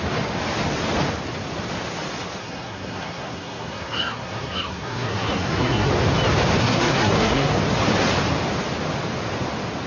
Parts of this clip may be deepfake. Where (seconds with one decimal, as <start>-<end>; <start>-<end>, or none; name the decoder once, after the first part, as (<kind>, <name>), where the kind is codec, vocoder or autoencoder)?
2.4-5.9 (codec, SNAC); 6.6-7.6